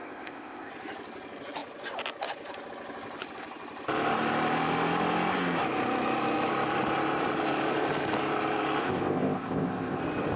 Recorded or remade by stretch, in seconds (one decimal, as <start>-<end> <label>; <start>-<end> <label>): 0.0-0.7 remade; 0.7-8.8 recorded; 8.8-10.0 remade; 10.0-10.4 recorded